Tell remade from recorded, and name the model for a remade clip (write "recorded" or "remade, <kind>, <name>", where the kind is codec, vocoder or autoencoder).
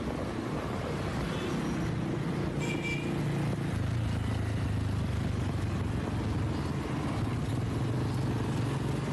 recorded